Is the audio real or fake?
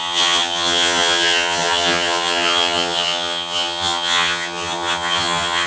fake